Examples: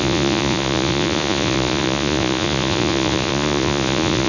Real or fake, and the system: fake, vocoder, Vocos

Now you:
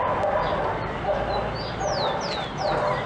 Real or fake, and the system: real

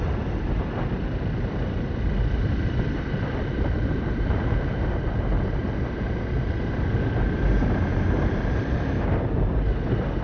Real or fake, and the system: real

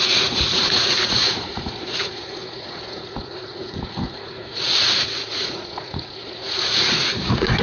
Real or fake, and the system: fake, vocoder, Vocos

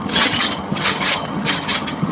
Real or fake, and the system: fake, vocoder, HiFi-GAN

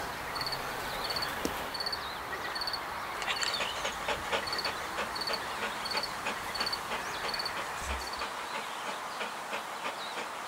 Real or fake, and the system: real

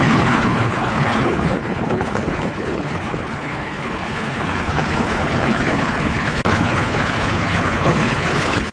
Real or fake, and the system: fake, codec, HILCodec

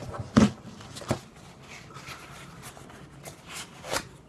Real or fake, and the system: real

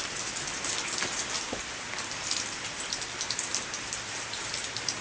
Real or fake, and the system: real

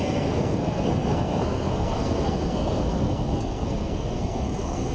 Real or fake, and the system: fake, codec, SNAC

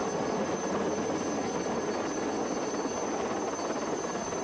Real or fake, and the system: real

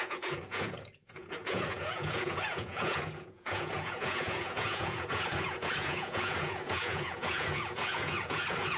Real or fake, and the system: fake, vocoder, Vocos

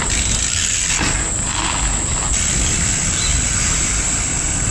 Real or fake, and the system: real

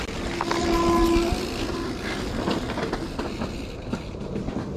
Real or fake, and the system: real